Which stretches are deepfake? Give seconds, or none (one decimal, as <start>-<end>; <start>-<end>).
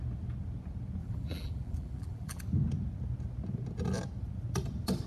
1.0-2.4